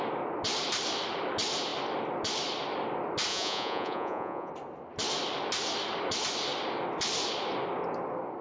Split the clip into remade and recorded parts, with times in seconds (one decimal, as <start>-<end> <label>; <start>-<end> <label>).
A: 0.0-3.3 recorded; 3.3-4.5 remade; 4.5-8.4 recorded